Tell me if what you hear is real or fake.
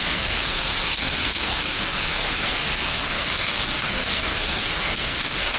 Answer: fake